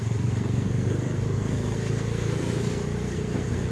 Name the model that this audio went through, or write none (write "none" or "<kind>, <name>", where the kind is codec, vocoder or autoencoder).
codec, SNAC